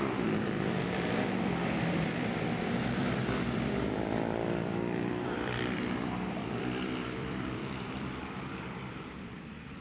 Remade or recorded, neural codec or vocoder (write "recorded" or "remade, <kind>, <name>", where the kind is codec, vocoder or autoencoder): remade, vocoder, BigVGAN v2